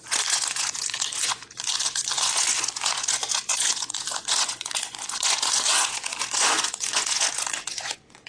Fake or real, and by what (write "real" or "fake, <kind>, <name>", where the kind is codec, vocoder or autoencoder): fake, vocoder, Vocos